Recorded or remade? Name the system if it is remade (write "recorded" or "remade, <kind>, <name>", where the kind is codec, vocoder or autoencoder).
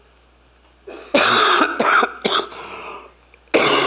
recorded